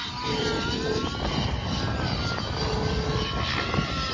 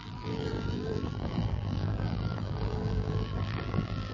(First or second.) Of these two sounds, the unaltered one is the first